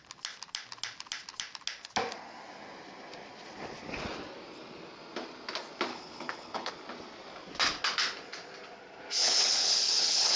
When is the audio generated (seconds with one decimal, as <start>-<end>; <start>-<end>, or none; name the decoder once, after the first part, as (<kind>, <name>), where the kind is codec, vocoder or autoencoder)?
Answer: 5.9-6.7 (codec, HILCodec); 9.2-10.4